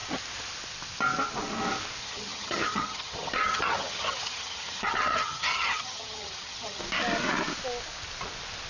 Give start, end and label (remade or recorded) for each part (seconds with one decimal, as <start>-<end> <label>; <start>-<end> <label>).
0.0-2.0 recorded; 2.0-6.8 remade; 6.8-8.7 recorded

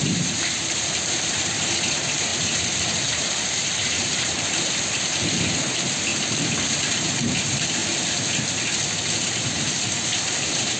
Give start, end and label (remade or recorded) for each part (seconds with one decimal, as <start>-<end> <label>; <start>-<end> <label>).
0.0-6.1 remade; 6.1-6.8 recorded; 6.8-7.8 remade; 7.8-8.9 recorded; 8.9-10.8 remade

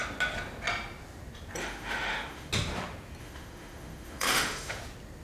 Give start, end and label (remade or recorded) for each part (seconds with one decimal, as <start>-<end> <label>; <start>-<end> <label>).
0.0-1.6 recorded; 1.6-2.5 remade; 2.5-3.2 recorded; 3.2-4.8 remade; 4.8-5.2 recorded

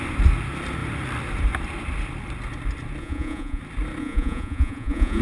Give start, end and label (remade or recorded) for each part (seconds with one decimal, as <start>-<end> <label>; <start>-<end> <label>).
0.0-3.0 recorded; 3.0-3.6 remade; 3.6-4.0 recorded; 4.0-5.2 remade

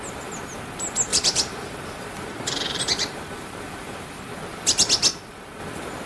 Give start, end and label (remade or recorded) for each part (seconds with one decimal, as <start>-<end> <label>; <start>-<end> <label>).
0.0-1.1 recorded; 1.1-4.2 remade; 4.2-6.1 recorded

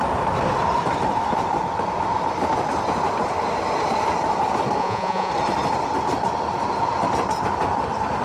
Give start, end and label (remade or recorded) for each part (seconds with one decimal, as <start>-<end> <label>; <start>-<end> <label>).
0.0-4.8 recorded; 4.8-5.3 remade; 5.3-8.2 recorded

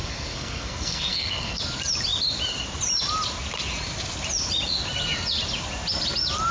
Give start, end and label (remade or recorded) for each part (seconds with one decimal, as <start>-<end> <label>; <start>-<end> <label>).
0.0-1.6 remade; 1.6-6.5 recorded

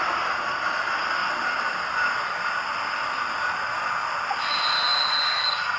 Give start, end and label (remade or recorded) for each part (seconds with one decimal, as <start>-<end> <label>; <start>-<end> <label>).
0.0-5.8 recorded